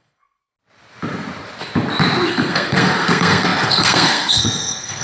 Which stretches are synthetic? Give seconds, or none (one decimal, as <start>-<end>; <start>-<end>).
0.0-0.4; 2.3-5.0